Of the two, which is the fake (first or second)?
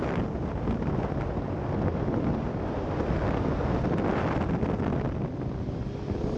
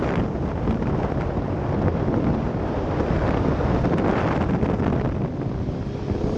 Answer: second